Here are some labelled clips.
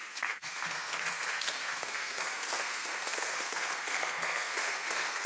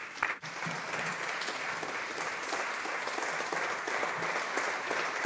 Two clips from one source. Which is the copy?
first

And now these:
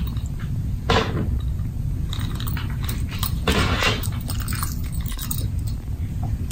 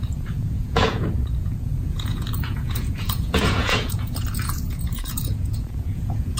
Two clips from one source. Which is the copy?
second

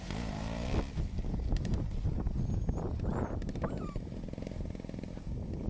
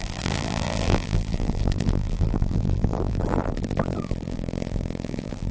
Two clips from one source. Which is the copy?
second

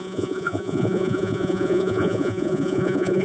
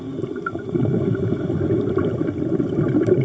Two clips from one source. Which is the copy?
first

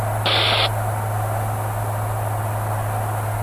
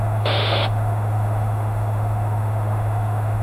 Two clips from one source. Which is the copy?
second